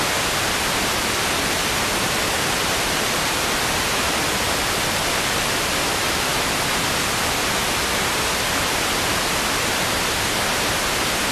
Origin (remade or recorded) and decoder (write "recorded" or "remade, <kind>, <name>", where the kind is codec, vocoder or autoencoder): recorded